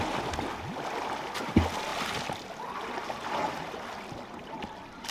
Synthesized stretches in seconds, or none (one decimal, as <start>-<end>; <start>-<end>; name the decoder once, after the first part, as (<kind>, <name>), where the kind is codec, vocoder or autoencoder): none